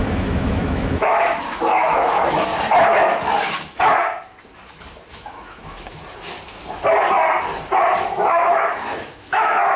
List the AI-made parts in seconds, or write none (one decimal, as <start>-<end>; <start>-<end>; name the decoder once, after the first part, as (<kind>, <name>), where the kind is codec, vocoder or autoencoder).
0.0-2.5 (autoencoder, DAC-VAE); 5.1-6.0; 8.0-9.8